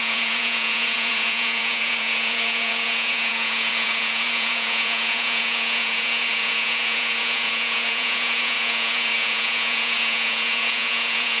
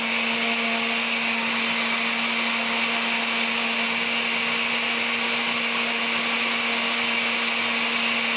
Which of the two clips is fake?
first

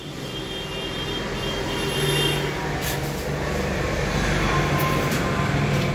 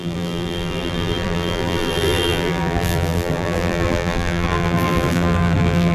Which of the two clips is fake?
second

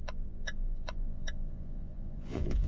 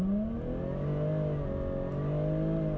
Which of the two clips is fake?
first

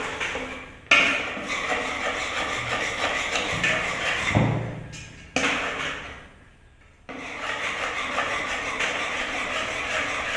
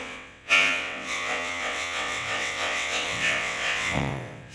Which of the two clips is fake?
second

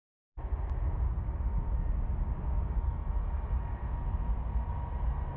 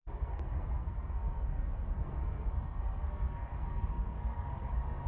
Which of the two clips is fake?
second